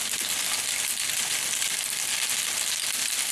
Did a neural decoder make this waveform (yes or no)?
no